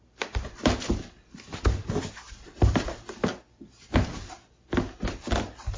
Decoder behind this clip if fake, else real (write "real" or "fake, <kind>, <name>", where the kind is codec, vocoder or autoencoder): real